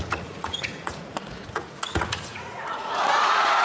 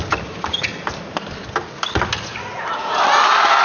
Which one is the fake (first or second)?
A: first